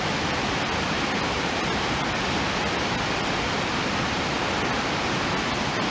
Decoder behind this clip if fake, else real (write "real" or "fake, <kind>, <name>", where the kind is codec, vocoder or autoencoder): real